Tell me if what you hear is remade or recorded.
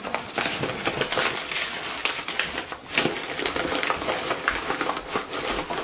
recorded